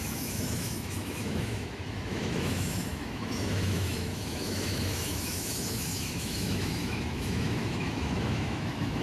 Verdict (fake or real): fake